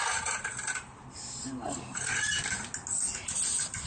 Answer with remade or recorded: recorded